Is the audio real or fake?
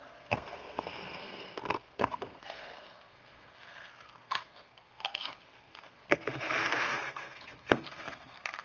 fake